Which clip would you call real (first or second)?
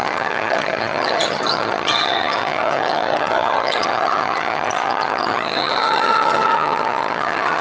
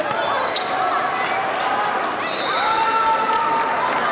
second